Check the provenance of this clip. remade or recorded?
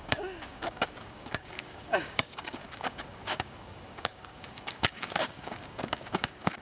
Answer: remade